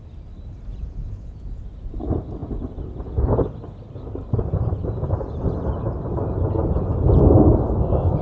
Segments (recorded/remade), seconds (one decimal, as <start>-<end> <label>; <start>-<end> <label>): 0.0-0.8 recorded; 0.8-1.6 remade; 1.6-8.2 recorded